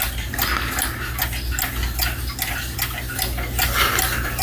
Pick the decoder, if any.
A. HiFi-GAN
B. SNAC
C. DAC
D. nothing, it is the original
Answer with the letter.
D